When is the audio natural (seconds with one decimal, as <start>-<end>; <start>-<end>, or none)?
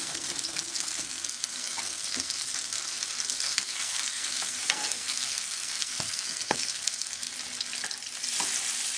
7.3-9.0